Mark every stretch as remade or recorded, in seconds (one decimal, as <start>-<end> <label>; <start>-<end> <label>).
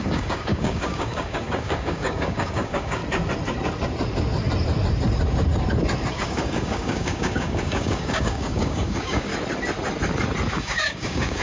0.0-3.0 remade; 3.0-6.1 recorded; 6.1-9.3 remade; 9.3-10.5 recorded; 10.5-11.4 remade